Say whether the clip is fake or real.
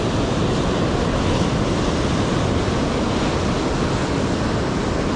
real